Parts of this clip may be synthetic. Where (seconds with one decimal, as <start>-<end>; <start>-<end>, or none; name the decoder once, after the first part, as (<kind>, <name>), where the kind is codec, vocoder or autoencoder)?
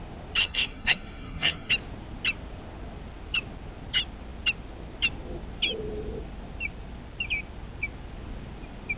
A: 0.4-1.7 (codec, SNAC)